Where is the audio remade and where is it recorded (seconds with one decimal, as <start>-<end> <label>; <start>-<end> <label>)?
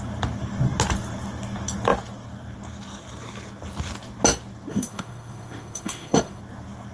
0.0-4.7 recorded; 4.7-6.4 remade; 6.4-6.9 recorded